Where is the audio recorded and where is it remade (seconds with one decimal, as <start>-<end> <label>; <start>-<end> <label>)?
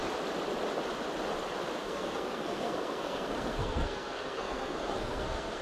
0.0-1.8 recorded; 1.8-5.6 remade